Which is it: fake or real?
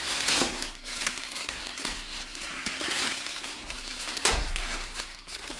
fake